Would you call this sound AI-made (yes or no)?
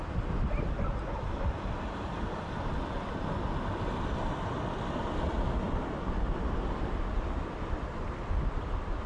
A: no